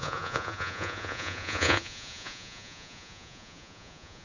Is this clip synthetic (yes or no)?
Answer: yes